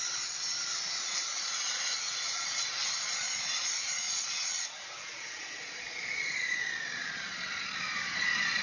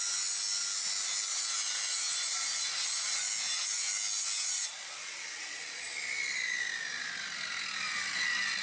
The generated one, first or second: first